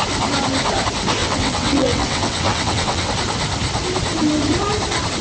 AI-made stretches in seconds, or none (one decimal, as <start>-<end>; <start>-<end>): 1.2-3.1